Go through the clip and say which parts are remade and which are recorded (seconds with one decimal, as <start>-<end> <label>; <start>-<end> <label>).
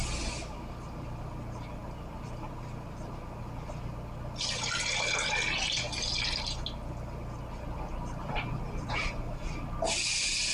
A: 0.0-10.5 recorded